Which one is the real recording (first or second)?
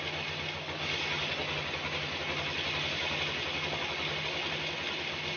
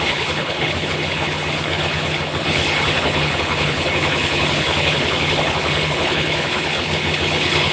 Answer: first